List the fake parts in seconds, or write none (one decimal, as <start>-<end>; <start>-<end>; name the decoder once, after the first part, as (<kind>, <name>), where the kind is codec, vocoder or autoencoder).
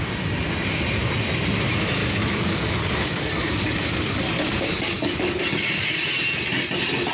2.0-5.4 (codec, DAC)